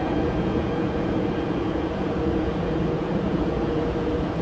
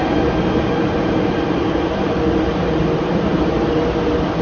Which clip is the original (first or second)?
second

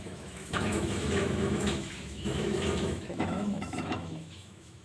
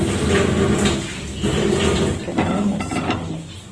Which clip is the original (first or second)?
second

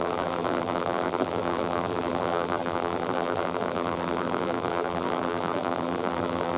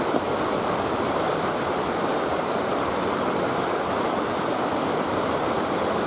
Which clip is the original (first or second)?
second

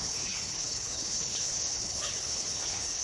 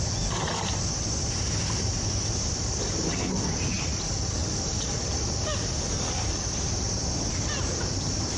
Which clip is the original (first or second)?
second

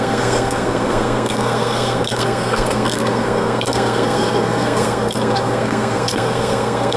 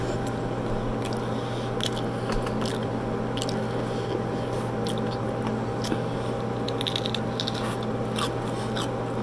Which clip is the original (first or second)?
second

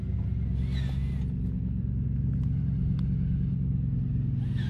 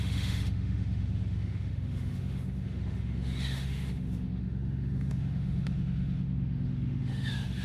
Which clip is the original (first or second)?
first